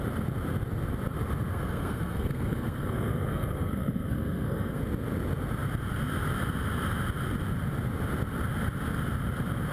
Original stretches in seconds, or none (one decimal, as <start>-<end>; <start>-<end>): 0.0-1.5; 4.8-9.7